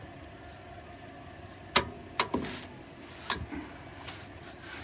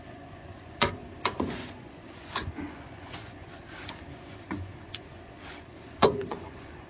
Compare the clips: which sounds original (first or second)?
first